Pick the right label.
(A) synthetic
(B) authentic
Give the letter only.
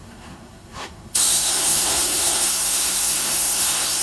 A